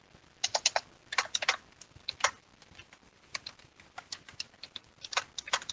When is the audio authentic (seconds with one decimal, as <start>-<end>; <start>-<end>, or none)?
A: 0.0-2.5; 5.2-5.7